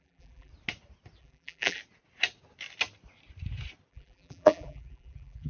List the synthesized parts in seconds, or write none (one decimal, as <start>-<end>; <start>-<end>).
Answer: 0.0-0.5; 1.2-1.8; 3.9-5.5